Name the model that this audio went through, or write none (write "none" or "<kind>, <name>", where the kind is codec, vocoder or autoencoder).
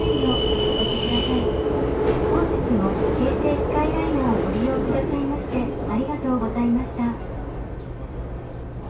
none